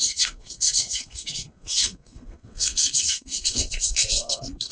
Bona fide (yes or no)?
no